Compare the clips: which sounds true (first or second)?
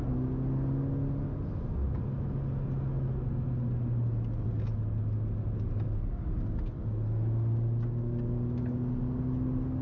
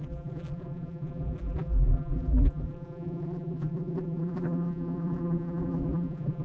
first